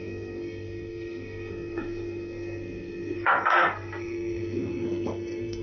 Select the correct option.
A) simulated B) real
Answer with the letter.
A